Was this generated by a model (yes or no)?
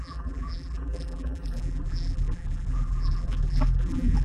yes